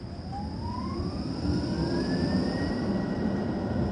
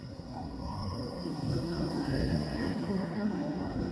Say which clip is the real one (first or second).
first